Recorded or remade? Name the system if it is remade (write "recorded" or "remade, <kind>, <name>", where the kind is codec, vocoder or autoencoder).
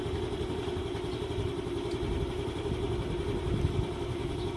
recorded